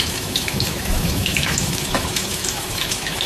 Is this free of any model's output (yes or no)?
no